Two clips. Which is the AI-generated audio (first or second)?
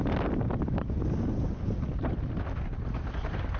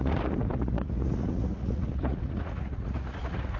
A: second